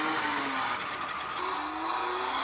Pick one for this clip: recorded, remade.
recorded